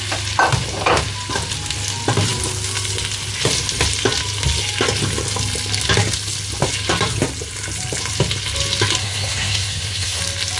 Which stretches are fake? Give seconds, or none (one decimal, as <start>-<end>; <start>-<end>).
9.0-10.2